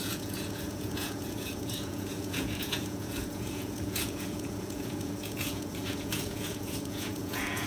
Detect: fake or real fake